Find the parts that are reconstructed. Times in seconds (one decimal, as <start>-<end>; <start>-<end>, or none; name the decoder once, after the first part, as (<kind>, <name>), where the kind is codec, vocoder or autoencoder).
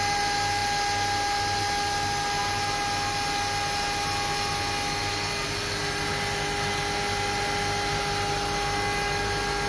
none